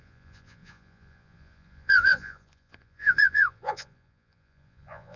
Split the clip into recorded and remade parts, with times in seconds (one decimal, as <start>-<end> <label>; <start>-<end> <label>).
0.0-5.2 remade